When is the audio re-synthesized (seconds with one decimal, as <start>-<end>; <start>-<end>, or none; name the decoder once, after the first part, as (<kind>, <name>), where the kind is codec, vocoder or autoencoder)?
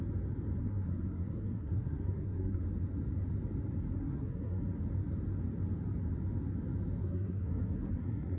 0.6-2.6 (codec, SNAC); 4.0-4.6; 7.0-8.4